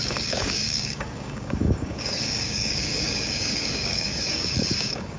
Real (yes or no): no